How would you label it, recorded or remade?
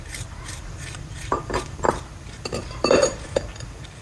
remade